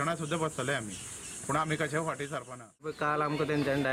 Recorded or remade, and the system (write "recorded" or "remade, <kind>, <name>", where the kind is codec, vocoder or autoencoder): recorded